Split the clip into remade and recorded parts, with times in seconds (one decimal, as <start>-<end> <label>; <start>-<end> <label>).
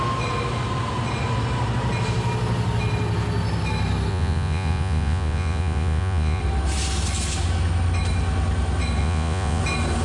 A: 0.0-4.1 recorded; 4.1-6.4 remade; 6.4-9.0 recorded; 9.0-9.6 remade; 9.6-10.0 recorded